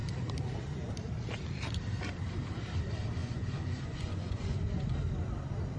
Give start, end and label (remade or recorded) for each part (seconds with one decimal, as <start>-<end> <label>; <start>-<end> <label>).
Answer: 0.0-3.2 recorded; 3.2-4.9 remade; 4.9-5.8 recorded